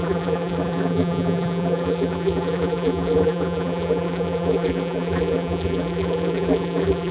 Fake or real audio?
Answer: fake